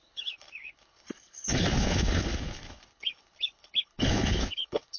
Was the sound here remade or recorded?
remade